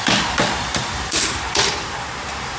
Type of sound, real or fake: fake